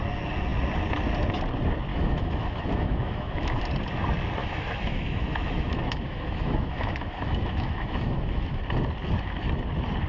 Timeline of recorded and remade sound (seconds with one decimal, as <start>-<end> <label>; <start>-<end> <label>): 0.0-1.9 recorded; 1.9-3.6 remade; 3.6-4.4 recorded; 4.4-8.6 remade; 8.6-10.1 recorded